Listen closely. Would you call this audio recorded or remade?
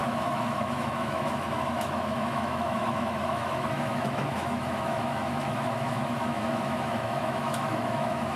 remade